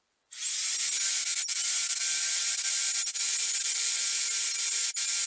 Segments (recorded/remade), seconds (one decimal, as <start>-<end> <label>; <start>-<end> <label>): 0.0-5.3 recorded